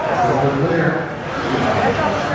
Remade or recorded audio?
recorded